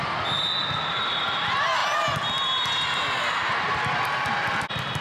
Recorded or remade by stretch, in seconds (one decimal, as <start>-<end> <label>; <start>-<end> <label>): 0.0-5.0 recorded